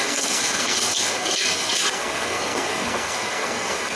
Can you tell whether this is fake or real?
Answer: fake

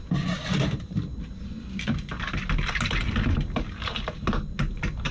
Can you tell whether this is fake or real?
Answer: real